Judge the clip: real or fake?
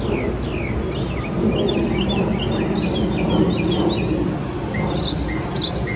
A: real